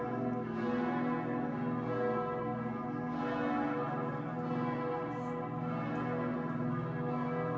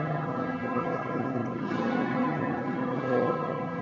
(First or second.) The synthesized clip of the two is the second